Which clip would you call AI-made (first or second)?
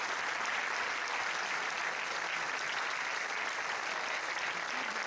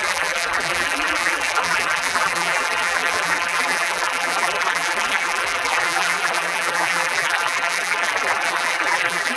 second